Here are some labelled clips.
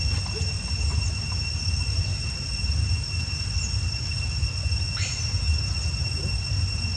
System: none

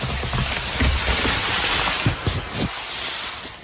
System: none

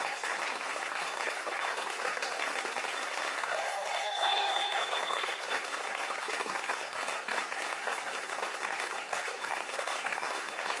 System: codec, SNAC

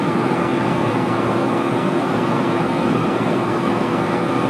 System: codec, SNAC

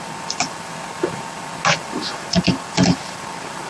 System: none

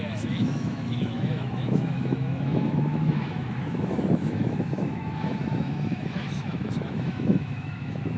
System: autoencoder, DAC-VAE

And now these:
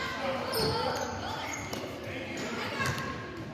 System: none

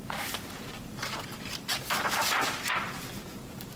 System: vocoder, BigVGAN v2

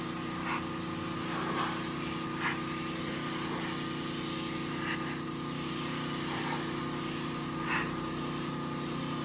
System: none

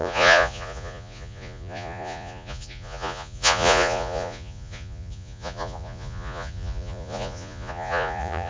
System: vocoder, Vocos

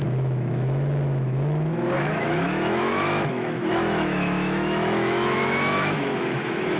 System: autoencoder, DAC-VAE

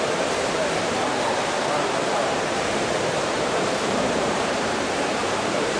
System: vocoder, BigVGAN v2